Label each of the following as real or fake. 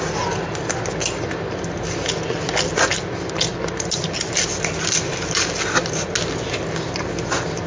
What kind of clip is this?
real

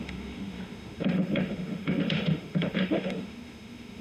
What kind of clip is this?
fake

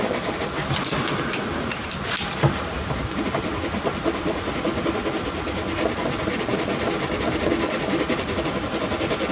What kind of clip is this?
real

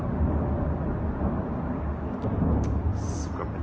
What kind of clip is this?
real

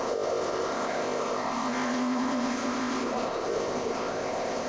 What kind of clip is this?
fake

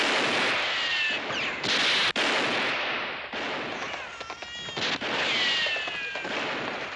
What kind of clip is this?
real